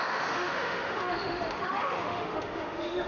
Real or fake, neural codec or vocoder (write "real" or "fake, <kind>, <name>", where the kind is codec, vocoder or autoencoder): fake, autoencoder, DAC-VAE